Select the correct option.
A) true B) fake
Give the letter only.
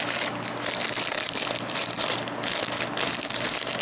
A